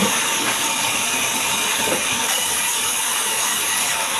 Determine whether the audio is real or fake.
fake